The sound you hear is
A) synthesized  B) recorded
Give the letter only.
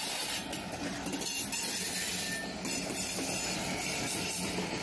B